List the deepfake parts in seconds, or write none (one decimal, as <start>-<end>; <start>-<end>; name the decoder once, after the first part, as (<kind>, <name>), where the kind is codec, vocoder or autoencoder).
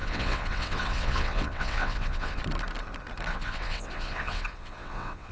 0.0-2.4 (vocoder, WaveNeXt); 3.3-5.3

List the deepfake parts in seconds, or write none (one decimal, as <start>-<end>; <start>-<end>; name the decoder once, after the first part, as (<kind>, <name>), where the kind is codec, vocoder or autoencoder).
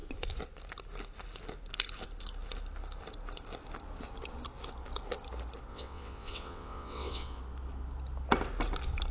5.7-7.4 (vocoder, WaveNeXt)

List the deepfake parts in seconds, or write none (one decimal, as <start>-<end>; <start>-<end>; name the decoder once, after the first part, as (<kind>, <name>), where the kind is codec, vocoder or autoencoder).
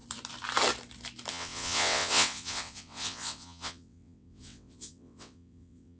1.3-6.0 (vocoder, WaveNeXt)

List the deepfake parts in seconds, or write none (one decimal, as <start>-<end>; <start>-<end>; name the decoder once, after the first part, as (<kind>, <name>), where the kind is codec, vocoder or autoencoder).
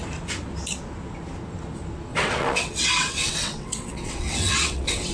2.1-5.1 (vocoder, WaveNeXt)